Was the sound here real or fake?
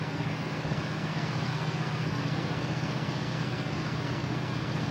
fake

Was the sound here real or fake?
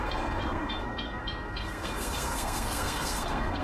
fake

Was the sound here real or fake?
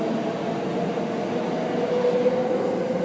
real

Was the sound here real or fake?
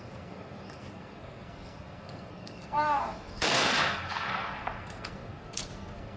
fake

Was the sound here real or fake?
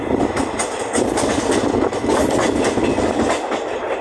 real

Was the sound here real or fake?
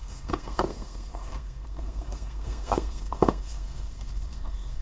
fake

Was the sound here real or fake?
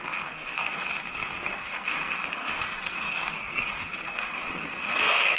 fake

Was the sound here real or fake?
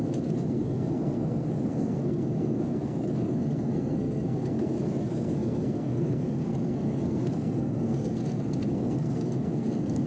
fake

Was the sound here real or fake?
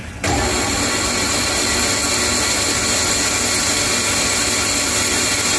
real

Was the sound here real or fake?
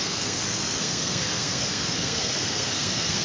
fake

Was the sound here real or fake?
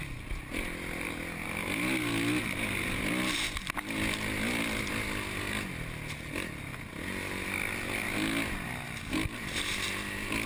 real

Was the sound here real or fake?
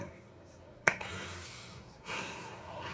fake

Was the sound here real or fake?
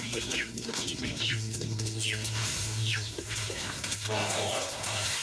fake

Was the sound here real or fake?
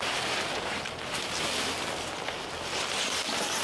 real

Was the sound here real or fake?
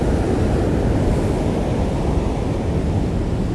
real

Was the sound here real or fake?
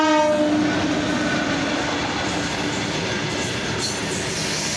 real